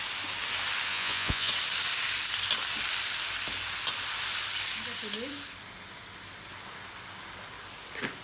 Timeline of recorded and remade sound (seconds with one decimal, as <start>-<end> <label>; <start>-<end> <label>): 0.0-0.9 recorded; 0.9-1.5 remade; 1.5-8.2 recorded